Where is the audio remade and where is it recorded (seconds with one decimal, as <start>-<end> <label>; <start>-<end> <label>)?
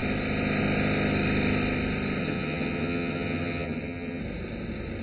0.0-2.2 recorded; 2.2-4.2 remade; 4.2-5.0 recorded